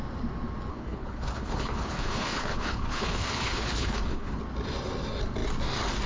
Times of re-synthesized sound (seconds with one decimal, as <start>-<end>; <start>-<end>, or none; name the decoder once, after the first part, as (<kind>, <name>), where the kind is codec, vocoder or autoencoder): 0.7-4.4 (codec, HILCodec)